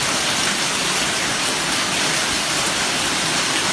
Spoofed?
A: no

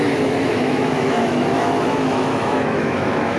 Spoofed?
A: yes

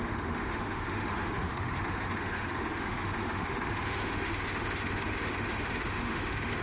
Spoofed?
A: yes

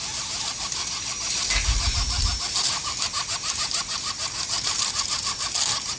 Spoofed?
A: no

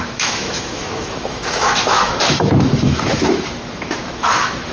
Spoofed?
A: yes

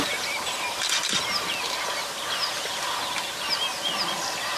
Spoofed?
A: no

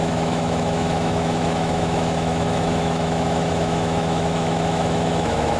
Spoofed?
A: yes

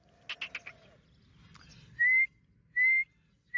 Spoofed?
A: no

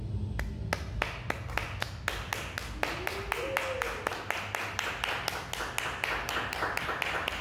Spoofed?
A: no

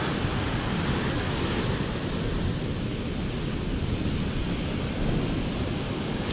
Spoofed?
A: no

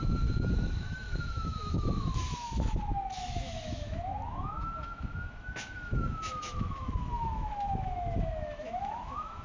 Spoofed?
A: yes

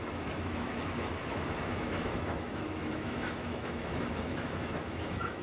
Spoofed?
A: yes